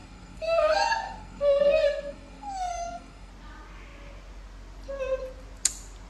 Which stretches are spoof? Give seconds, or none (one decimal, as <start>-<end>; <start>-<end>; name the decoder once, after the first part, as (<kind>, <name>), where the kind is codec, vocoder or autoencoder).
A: 0.0-3.3 (codec, SNAC)